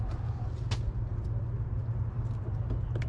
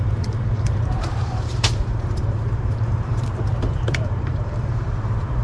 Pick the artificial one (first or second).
second